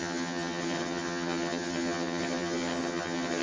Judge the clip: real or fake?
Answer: fake